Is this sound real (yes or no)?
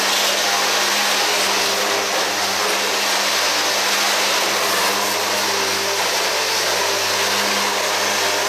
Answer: yes